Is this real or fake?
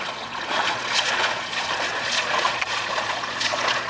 fake